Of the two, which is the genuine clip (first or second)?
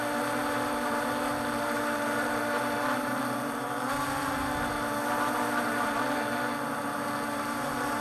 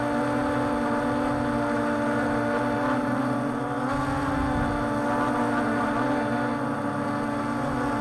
second